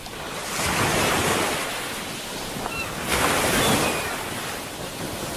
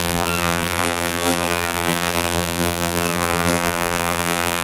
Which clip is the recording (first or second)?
first